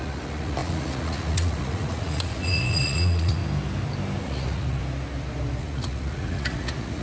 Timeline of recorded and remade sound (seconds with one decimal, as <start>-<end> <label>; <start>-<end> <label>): 0.0-3.4 remade; 3.4-4.2 recorded; 4.2-4.8 remade; 4.8-5.6 recorded; 5.6-7.0 remade